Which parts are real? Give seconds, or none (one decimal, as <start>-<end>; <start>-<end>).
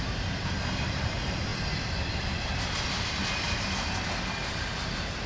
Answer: 1.5-2.1; 2.5-4.7